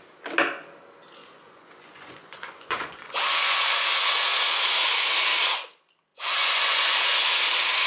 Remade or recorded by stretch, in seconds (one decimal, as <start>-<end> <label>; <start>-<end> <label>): 0.0-1.2 recorded; 1.2-4.6 remade; 4.6-6.1 recorded; 6.1-7.4 remade; 7.4-7.9 recorded